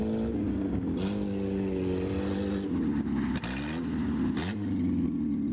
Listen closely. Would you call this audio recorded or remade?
recorded